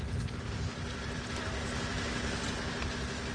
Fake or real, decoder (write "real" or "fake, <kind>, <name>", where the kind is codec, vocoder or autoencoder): real